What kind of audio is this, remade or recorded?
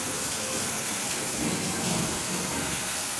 remade